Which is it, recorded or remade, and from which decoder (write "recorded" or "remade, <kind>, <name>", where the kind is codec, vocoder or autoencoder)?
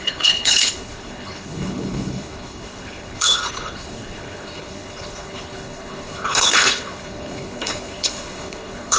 remade, codec, HILCodec